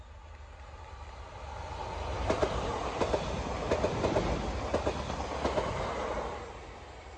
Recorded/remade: recorded